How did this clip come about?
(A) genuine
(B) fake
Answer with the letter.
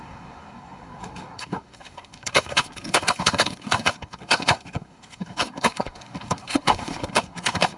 B